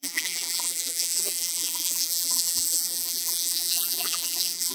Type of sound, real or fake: fake